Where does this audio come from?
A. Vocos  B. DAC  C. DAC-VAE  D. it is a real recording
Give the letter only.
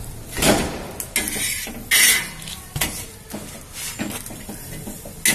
D